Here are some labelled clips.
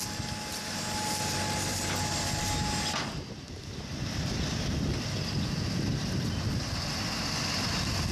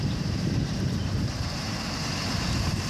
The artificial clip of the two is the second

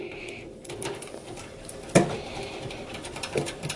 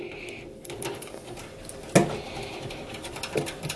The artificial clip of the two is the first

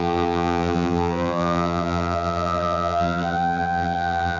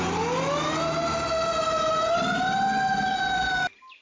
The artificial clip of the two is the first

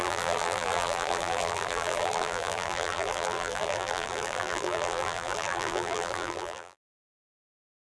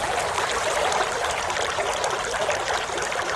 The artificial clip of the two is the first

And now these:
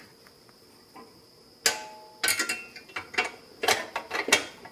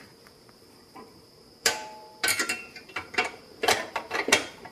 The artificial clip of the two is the second